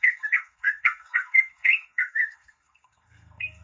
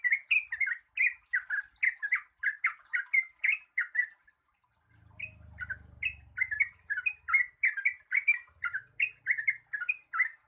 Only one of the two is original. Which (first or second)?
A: second